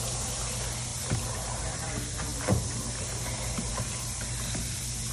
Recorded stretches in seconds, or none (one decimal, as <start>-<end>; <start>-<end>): 0.0-5.1